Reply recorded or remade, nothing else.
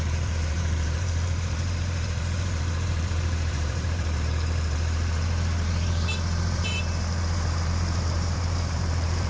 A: remade